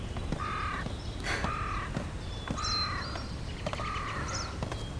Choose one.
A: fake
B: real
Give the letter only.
B